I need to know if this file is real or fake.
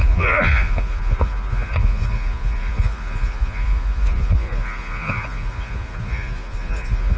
fake